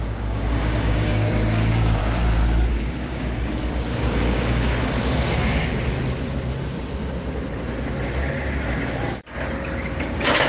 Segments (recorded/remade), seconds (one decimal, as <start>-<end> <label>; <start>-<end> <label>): 0.0-2.0 remade; 2.0-2.7 recorded; 2.7-5.7 remade; 5.7-10.0 recorded; 10.0-10.5 remade